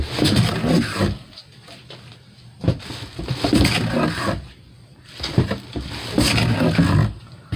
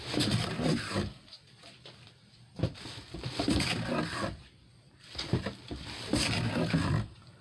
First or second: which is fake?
second